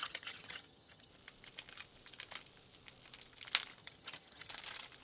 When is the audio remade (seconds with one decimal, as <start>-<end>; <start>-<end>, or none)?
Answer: 0.0-1.1; 3.8-4.5